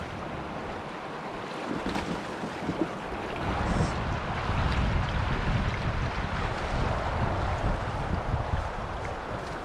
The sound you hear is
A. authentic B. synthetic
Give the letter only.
A